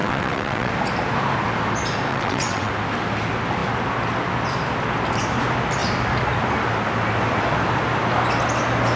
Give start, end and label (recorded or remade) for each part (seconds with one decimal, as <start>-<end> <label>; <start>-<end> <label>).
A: 0.0-0.7 remade; 0.7-2.1 recorded; 2.1-2.7 remade; 2.7-9.0 recorded